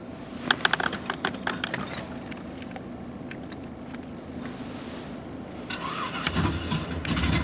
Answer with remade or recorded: recorded